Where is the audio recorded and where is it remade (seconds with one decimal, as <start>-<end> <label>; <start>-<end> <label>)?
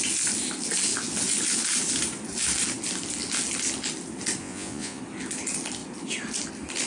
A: 0.0-4.4 recorded; 4.4-5.0 remade; 5.0-6.9 recorded